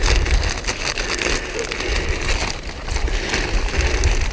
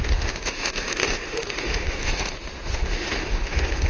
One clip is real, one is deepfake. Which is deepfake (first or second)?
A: second